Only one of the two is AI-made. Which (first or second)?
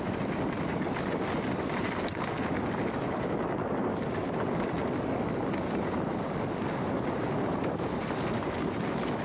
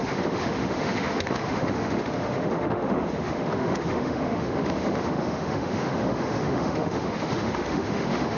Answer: second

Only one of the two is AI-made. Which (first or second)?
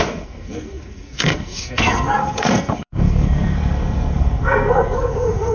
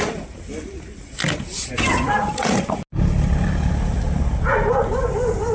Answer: first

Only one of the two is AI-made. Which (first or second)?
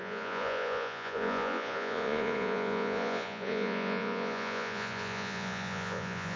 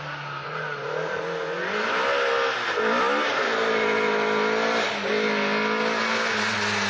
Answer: first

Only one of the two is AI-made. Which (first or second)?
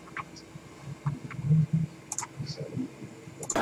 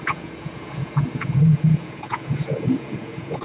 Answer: second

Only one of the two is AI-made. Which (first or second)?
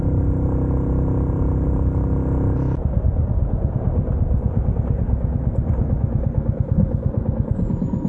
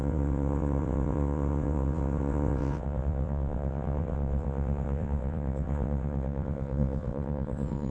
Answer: second